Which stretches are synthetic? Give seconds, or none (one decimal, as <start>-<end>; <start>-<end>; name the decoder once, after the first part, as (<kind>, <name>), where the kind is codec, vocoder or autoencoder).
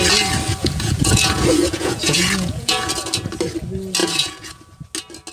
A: 0.6-2.9 (vocoder, Vocos); 4.0-4.6